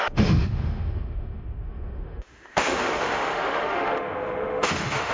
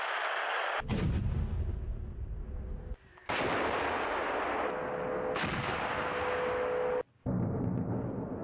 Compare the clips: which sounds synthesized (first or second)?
first